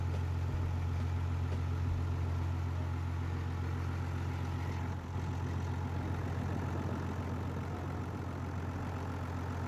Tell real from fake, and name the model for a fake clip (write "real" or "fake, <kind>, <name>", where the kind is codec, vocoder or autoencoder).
real